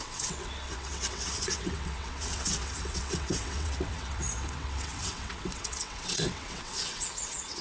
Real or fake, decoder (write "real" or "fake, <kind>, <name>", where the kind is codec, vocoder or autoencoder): fake, vocoder, WaveNeXt